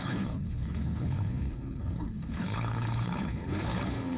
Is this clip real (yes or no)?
no